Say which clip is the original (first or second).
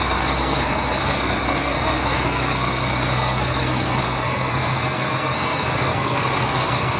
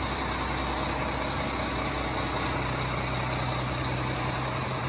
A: second